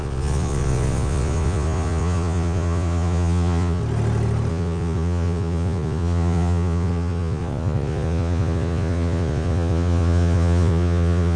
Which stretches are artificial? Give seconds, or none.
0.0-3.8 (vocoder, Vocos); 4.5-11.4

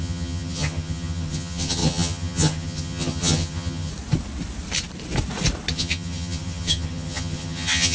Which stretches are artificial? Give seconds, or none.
0.0-3.9 (vocoder, HiFi-GAN); 5.7-7.9

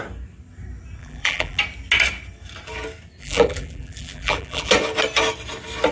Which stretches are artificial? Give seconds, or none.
1.0-1.6 (vocoder, BigVGAN v2); 3.2-4.7

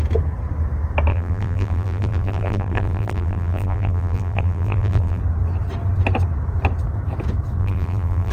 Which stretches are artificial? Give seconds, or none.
1.1-5.2 (vocoder, BigVGAN v2); 7.6-8.3

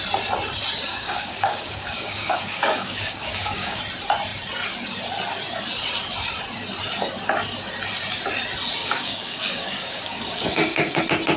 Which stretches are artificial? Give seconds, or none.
0.9-3.8 (codec, DAC); 8.8-11.0

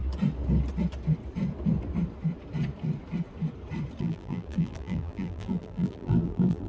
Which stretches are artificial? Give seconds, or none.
4.0-6.7 (vocoder, BigVGAN v2)

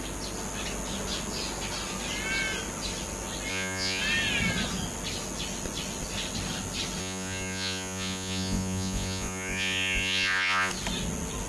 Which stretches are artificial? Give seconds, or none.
3.5-4.0 (vocoder, Vocos); 7.0-10.7

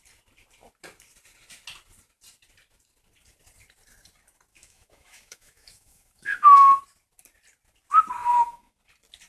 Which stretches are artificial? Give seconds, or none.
4.5-6.8 (autoencoder, DAC-VAE); 8.2-8.8